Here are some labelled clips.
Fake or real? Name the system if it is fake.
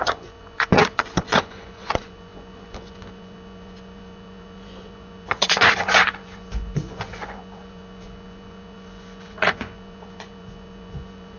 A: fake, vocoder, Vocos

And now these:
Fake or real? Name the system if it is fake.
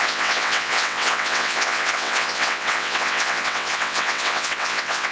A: fake, vocoder, WaveNeXt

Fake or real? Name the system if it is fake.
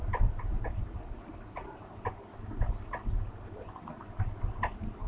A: real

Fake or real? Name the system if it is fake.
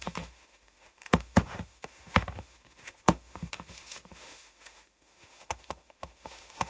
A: fake, autoencoder, DAC-VAE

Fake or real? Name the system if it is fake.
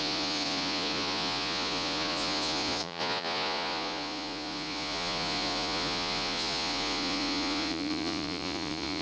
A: fake, vocoder, Vocos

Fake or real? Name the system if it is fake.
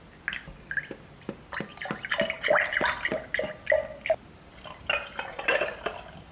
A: real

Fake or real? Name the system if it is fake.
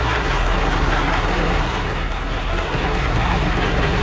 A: fake, codec, SNAC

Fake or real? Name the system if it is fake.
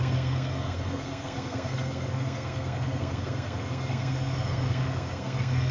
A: fake, codec, SNAC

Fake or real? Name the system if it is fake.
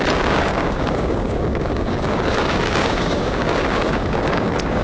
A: fake, codec, DAC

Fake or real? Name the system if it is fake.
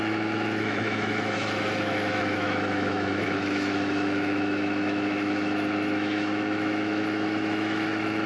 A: fake, autoencoder, DAC-VAE